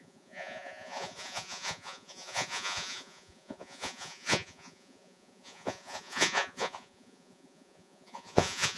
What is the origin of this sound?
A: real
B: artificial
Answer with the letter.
B